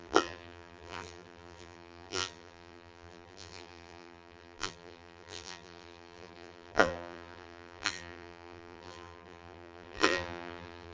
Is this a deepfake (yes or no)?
yes